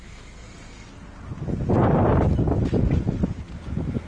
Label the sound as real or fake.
real